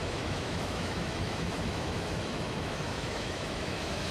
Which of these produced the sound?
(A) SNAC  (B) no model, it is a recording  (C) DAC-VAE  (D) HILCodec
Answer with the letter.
C